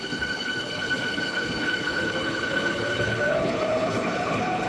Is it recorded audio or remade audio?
remade